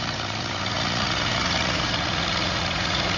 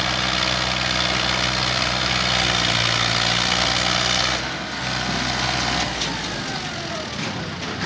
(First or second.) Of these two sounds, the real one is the second